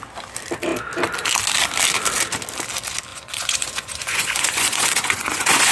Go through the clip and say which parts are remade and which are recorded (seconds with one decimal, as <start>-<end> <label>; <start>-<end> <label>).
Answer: 0.0-3.1 recorded; 3.1-5.7 remade